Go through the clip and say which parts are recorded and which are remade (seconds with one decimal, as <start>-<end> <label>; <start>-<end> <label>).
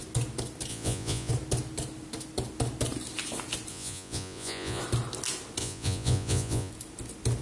0.0-0.7 recorded; 0.7-1.3 remade; 1.3-3.7 recorded; 3.7-4.8 remade; 4.8-5.6 recorded; 5.6-6.7 remade; 6.7-7.4 recorded